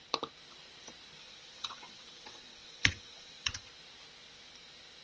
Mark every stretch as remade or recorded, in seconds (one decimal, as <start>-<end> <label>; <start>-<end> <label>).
0.0-1.2 recorded; 1.2-3.7 remade; 3.7-5.0 recorded